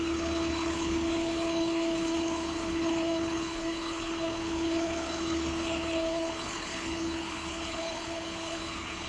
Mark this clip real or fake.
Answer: fake